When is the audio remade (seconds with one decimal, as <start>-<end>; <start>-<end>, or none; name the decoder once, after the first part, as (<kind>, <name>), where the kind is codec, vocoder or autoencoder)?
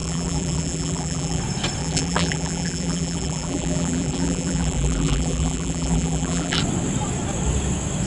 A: 0.0-1.4 (vocoder, BigVGAN v2); 1.8-6.6